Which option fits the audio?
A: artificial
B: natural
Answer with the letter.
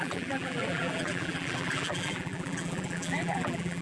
A